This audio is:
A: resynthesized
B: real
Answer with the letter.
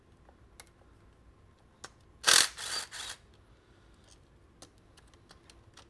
B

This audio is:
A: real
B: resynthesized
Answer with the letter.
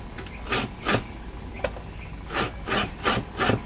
A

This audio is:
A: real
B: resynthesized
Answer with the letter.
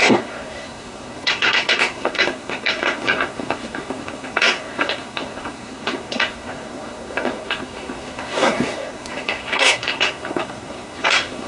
B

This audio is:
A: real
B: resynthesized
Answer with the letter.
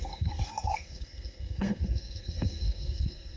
B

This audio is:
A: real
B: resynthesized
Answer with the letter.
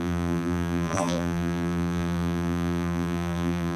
B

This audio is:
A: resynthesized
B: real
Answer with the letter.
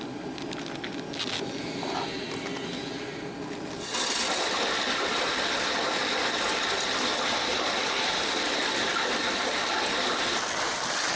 B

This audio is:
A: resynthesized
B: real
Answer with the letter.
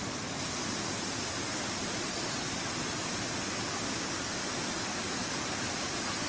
B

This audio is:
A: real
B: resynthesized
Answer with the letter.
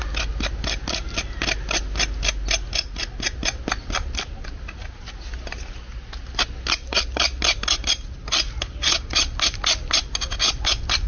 A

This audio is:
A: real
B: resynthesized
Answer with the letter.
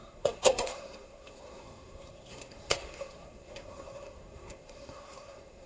B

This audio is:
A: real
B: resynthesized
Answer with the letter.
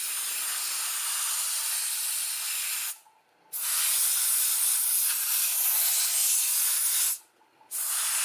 A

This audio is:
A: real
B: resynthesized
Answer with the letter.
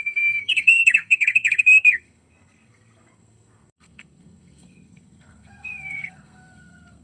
B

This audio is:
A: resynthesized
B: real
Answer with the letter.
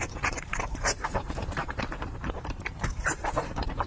A